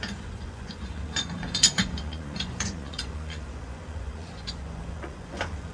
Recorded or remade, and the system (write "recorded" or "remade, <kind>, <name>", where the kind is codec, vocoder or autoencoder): remade, vocoder, Vocos